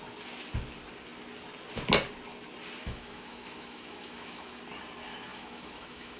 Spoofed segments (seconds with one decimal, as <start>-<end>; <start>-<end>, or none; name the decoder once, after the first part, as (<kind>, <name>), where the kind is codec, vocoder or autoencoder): 2.8-4.6 (autoencoder, DAC-VAE); 5.3-6.2